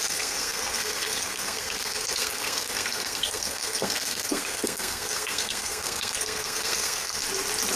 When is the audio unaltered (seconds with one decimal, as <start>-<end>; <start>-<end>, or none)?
7.2-7.8